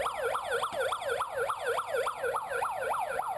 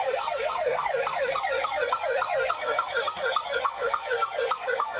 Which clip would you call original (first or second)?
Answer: first